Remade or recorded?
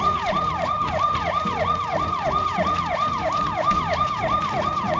remade